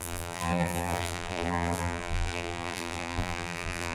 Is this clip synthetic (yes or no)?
yes